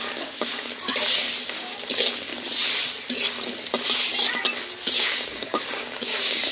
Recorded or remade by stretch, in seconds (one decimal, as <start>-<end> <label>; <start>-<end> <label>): 0.0-0.7 remade; 0.7-1.4 recorded; 1.4-2.3 remade; 2.3-5.0 recorded; 5.0-6.5 remade